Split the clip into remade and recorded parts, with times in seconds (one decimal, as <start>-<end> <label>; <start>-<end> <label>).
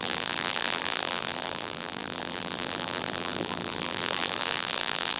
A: 0.0-5.2 remade